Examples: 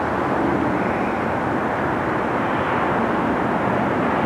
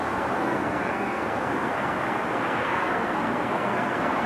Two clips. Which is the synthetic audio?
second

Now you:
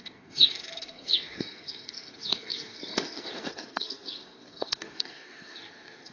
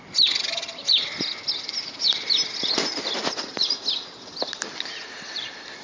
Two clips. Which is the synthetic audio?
first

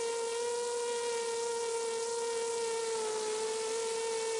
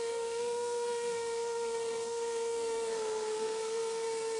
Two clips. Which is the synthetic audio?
second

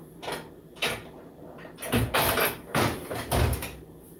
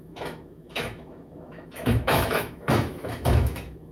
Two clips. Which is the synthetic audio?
second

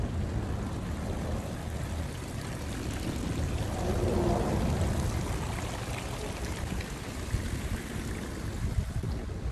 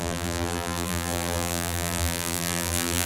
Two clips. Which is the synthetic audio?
second